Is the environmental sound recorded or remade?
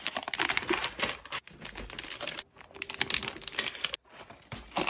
recorded